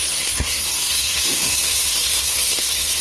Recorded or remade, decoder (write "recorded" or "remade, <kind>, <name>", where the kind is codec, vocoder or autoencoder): remade, codec, SNAC